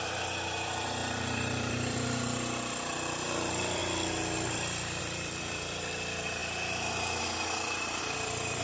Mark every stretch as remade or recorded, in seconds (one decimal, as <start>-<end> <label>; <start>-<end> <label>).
0.0-3.8 remade; 3.8-5.0 recorded; 5.0-6.4 remade; 6.4-8.0 recorded; 8.0-8.6 remade